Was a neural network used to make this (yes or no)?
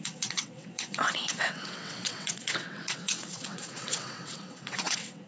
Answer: yes